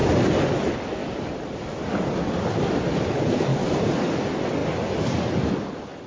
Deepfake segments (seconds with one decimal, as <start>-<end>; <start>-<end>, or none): none